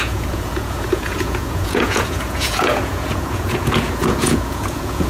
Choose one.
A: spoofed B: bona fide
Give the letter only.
A